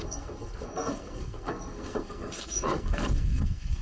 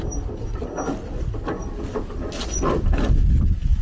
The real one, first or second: second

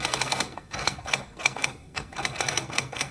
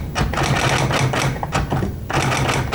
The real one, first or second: second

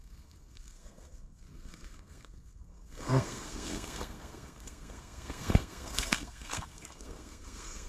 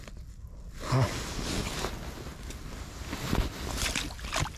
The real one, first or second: second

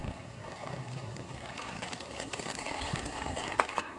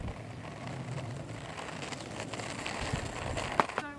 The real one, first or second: second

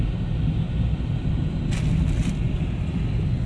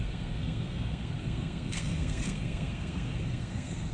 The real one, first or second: first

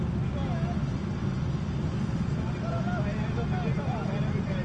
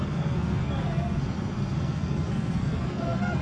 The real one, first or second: first